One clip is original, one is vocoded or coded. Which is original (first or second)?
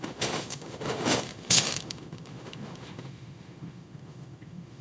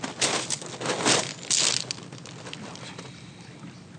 second